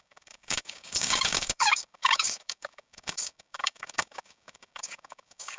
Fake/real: fake